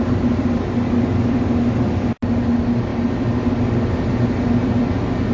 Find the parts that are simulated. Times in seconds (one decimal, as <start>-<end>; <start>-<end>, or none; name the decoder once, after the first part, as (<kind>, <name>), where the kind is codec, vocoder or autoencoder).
none